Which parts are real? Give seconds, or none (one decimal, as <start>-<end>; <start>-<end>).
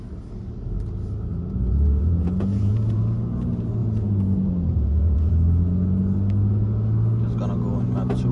0.0-1.3; 3.0-3.8; 5.3-8.3